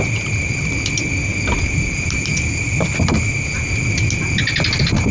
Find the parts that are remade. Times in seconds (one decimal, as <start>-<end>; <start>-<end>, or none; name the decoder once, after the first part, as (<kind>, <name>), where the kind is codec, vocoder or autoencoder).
none